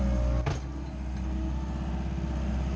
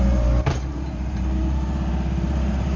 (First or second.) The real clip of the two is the first